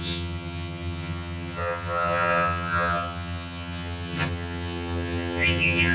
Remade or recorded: remade